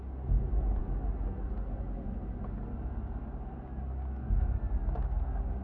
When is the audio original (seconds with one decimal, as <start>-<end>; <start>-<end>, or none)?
0.0-5.6